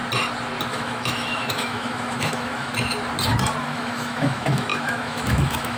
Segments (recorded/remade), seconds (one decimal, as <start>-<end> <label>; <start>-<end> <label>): 0.0-0.7 recorded; 0.7-2.7 remade; 2.7-3.6 recorded; 3.6-5.8 remade